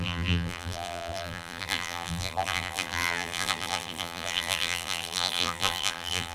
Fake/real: fake